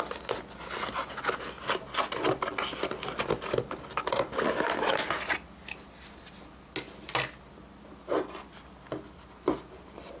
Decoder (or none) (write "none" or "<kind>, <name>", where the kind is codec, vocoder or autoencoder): none